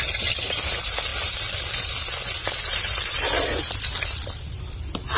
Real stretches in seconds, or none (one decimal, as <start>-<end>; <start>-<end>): 0.0-5.2

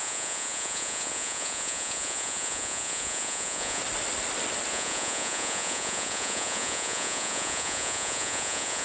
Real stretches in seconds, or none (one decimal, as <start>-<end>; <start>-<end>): 3.8-4.7

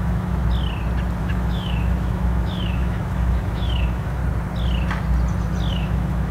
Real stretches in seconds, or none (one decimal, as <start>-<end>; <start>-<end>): 0.4-1.2; 4.2-5.7